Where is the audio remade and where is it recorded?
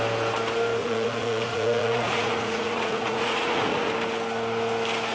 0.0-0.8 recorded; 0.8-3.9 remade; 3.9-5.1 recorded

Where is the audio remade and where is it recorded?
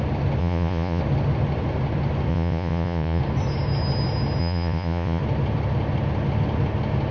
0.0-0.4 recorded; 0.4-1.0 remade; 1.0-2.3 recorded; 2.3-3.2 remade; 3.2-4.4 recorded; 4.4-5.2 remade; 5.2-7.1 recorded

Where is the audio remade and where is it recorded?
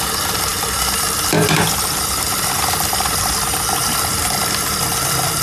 0.0-5.4 recorded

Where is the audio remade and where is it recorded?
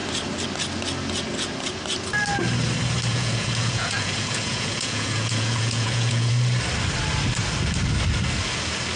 0.0-3.1 recorded; 3.1-6.3 remade; 6.3-9.0 recorded